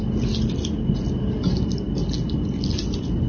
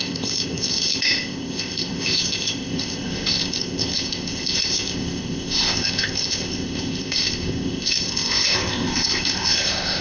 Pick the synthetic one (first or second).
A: second